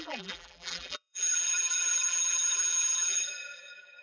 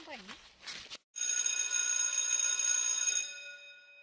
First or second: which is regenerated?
first